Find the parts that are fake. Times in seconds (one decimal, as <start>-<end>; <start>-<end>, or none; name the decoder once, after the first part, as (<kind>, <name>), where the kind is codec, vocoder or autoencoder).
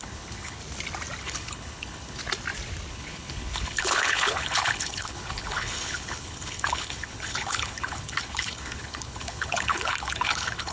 0.0-0.6 (codec, HILCodec); 1.2-2.2; 2.9-10.7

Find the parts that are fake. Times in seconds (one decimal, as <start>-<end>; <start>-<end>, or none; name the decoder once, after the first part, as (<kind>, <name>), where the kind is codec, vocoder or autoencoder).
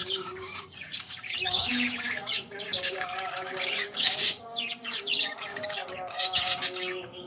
0.0-7.3 (codec, DAC)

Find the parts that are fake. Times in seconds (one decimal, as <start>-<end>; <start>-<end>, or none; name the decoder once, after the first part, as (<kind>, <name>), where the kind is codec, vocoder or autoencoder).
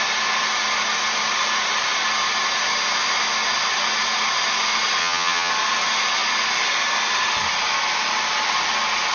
5.0-5.5 (vocoder, HiFi-GAN)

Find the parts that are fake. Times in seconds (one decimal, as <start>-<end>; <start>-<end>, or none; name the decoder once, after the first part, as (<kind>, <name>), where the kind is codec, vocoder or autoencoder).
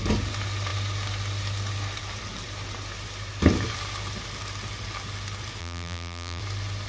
5.6-6.4 (vocoder, BigVGAN v2)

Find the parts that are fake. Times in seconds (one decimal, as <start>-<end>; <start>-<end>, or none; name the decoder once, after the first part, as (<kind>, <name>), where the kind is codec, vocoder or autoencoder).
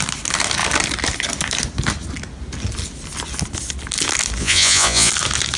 4.4-5.1 (vocoder, Vocos)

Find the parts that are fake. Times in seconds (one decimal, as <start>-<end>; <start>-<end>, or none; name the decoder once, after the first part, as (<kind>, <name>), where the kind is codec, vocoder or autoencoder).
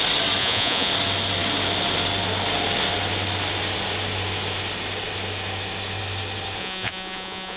0.4-0.9 (vocoder, Vocos); 6.6-7.6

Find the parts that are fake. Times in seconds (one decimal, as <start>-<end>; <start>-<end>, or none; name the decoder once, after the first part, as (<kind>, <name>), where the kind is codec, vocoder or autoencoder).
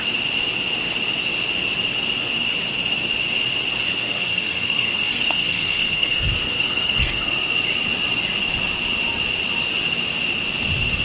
4.0-7.5 (codec, SNAC)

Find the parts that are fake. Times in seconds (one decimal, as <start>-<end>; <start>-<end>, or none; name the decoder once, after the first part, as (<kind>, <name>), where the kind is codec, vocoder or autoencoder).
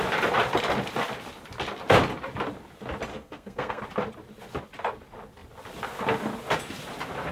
3.1-3.8 (codec, SNAC)